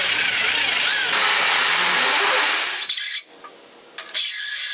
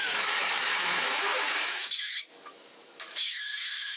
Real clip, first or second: first